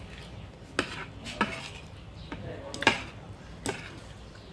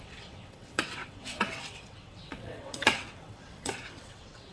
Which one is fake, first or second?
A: second